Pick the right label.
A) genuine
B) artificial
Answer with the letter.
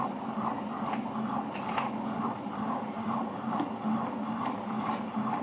A